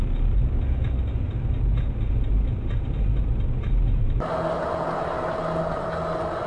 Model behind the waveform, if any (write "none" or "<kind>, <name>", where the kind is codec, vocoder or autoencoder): none